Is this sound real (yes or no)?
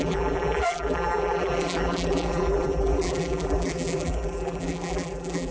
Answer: no